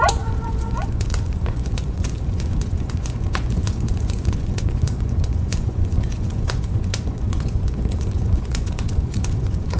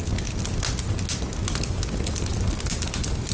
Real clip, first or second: second